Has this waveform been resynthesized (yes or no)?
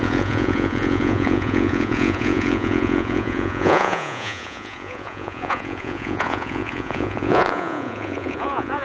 yes